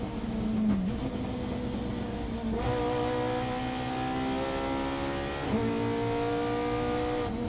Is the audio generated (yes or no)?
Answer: no